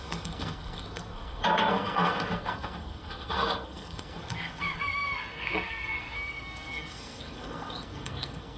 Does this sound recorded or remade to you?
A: remade